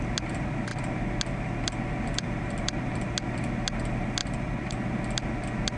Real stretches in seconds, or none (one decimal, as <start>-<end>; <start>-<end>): 0.0-2.1; 3.1-4.2; 4.7-5.8